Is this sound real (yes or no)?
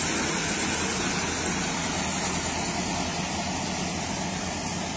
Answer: yes